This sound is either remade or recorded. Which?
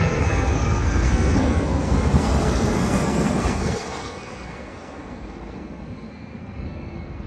remade